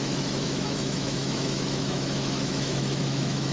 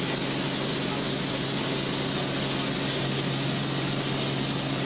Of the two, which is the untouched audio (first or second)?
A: second